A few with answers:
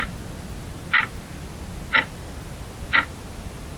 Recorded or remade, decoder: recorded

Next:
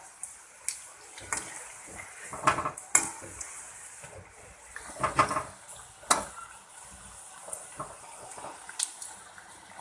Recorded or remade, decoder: recorded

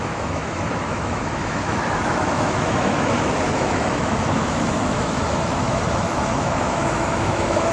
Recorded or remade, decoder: remade, autoencoder, DAC-VAE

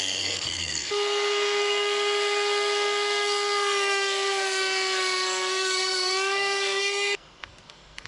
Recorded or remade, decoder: remade, codec, SNAC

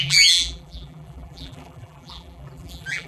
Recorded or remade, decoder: remade, vocoder, BigVGAN v2